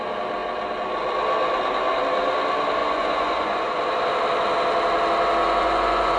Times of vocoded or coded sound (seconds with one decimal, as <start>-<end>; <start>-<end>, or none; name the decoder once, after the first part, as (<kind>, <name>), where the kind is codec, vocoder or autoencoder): 2.8-3.8 (vocoder, Vocos); 5.4-6.2